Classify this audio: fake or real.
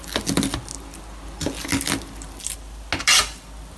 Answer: real